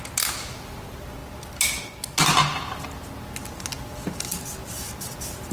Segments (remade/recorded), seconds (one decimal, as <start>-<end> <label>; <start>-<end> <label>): 0.0-5.5 recorded